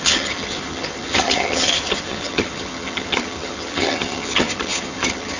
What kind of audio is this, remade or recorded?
remade